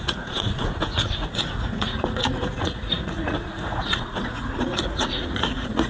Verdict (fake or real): fake